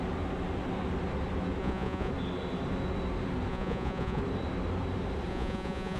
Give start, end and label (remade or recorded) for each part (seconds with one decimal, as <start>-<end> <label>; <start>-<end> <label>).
0.0-1.6 recorded; 1.6-2.1 remade; 2.1-3.5 recorded; 3.5-4.2 remade; 4.2-5.3 recorded; 5.3-6.0 remade